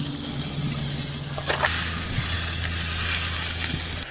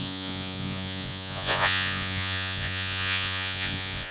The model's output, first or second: second